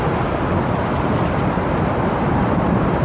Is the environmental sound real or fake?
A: real